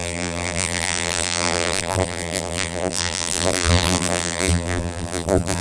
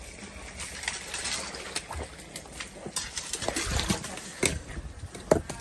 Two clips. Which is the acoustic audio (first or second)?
second